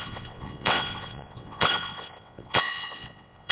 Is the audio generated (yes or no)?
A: yes